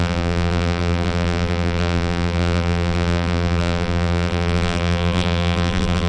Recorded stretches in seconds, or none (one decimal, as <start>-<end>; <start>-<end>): none